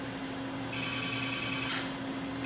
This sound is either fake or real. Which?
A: real